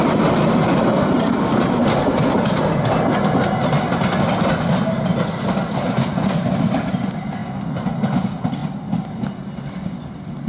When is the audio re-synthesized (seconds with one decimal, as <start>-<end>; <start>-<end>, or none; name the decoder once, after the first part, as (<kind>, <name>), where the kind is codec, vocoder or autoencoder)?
none